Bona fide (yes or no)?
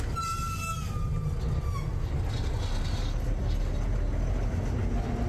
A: yes